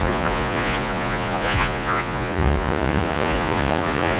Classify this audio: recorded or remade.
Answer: remade